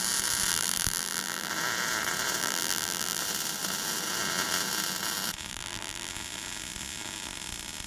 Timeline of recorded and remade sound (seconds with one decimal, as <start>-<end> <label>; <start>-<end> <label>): 0.0-0.5 recorded; 0.5-1.5 remade; 1.5-2.4 recorded; 2.4-3.2 remade; 3.2-5.5 recorded; 5.5-6.1 remade; 6.1-7.9 recorded